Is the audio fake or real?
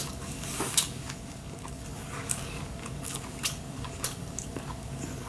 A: fake